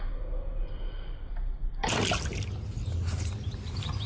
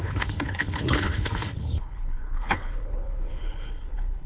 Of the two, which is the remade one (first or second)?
second